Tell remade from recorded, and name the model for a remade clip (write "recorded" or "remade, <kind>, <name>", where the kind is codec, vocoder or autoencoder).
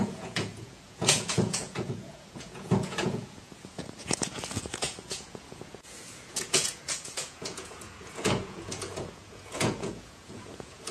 remade, vocoder, Vocos